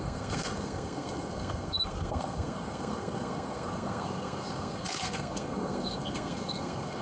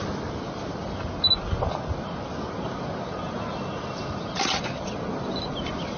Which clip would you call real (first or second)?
second